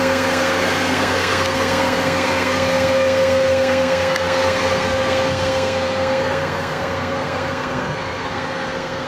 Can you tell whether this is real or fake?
fake